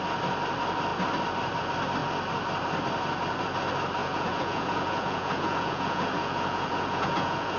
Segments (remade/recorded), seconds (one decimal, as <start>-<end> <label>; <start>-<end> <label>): 0.0-4.0 recorded; 4.0-7.6 remade